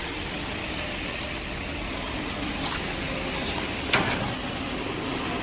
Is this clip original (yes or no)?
yes